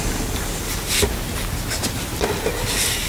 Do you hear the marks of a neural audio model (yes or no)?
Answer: no